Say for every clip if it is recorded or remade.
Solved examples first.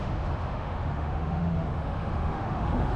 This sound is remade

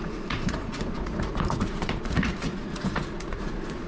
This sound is remade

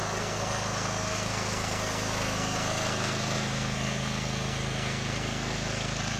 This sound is remade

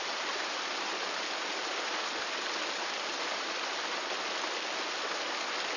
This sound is recorded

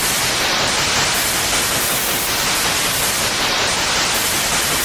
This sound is recorded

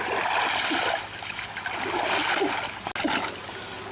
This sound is recorded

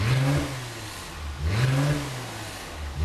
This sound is recorded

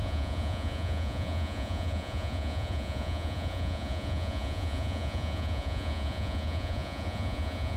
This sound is remade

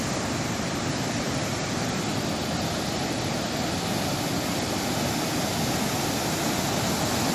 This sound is recorded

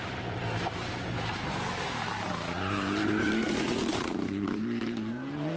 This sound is remade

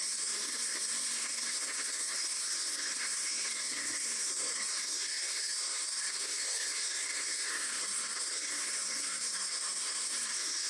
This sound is remade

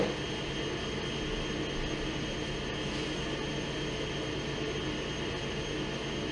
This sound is recorded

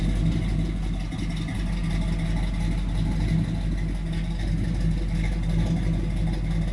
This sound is recorded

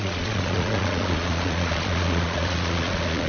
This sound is remade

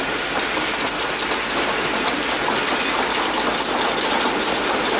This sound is recorded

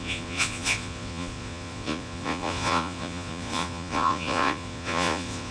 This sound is remade